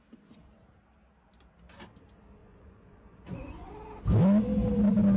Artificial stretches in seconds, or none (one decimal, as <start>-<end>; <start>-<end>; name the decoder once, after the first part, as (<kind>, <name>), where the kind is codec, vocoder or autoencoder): 2.4-3.7 (vocoder, Vocos)